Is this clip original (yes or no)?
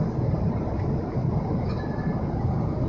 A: yes